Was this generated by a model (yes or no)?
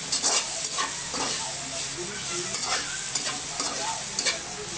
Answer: no